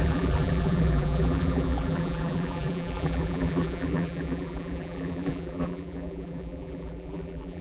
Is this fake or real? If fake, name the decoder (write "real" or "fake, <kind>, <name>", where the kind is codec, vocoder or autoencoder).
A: fake, vocoder, BigVGAN v2